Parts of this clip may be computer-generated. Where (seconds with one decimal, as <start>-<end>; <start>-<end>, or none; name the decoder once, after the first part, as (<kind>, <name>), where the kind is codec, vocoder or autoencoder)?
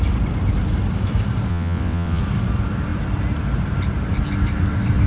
1.5-2.2 (vocoder, WaveNeXt)